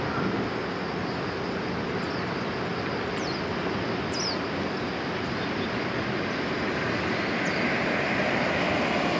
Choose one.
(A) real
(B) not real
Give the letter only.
A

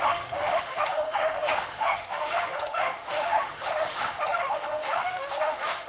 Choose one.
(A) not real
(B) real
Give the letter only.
A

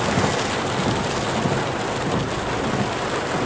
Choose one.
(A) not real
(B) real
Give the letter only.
B